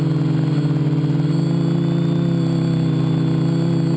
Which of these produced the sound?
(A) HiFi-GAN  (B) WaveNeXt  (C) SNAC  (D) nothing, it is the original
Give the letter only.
D